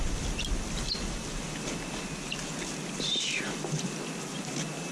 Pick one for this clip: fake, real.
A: real